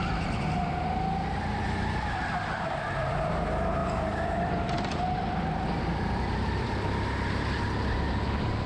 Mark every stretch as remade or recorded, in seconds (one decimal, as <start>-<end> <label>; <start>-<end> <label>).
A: 0.0-3.8 recorded; 3.8-6.7 remade; 6.7-8.7 recorded